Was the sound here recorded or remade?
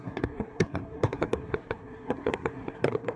remade